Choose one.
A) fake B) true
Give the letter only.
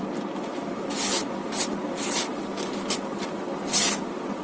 B